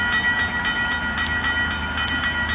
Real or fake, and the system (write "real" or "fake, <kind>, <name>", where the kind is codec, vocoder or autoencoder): real